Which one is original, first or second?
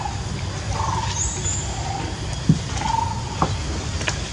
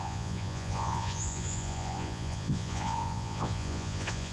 first